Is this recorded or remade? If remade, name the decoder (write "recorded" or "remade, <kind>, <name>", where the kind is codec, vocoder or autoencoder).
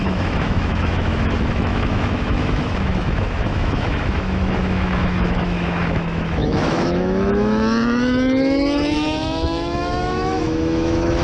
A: remade, autoencoder, DAC-VAE